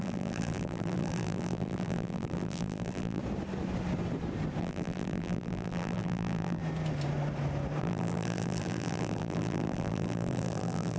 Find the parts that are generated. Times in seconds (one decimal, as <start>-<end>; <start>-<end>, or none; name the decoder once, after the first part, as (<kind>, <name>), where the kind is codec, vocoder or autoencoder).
0.0-3.2 (vocoder, BigVGAN v2); 4.6-6.6; 7.8-11.0